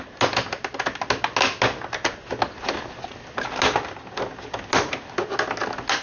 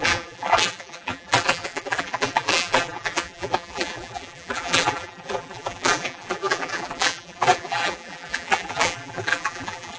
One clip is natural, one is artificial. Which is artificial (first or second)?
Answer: second